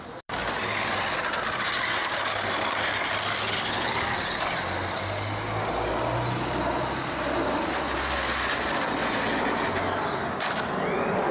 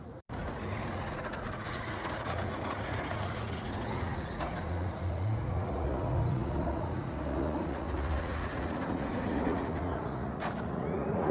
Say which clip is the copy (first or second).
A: second